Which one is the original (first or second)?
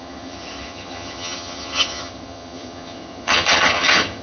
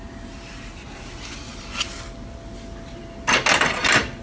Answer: second